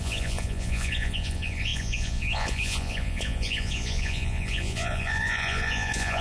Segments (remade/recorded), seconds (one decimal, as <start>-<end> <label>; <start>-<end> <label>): 0.0-6.2 remade